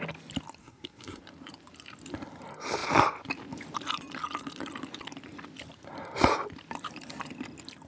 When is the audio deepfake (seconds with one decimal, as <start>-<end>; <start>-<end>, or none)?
0.6-1.2